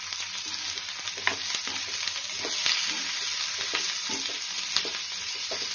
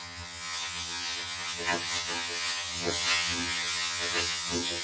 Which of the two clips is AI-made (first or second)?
second